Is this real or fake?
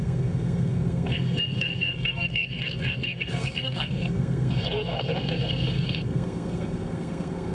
fake